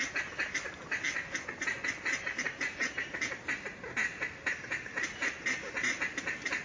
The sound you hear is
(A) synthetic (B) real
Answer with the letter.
B